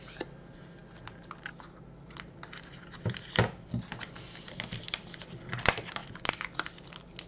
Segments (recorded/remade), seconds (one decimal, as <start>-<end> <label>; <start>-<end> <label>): 0.0-7.3 recorded